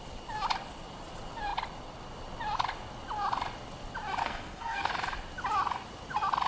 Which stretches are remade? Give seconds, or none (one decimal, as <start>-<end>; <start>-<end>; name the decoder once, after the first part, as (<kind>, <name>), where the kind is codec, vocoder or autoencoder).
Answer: 4.2-4.9 (codec, SNAC)

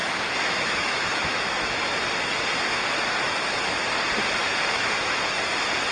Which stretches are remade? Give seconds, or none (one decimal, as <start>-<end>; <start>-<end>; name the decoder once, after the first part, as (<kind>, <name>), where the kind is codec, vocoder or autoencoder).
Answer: 0.0-3.5 (autoencoder, DAC-VAE); 4.4-5.1